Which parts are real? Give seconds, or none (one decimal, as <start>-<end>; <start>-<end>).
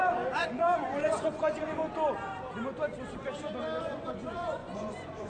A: 1.8-3.8